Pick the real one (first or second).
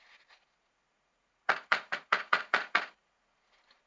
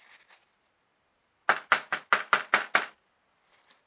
second